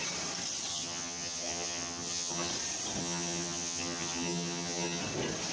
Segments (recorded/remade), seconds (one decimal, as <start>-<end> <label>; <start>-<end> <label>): 0.0-0.7 recorded; 0.7-2.5 remade; 2.5-3.0 recorded; 3.0-5.0 remade; 5.0-5.5 recorded